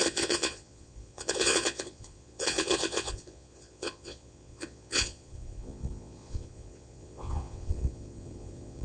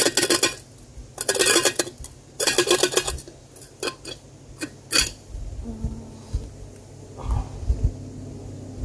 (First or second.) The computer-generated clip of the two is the first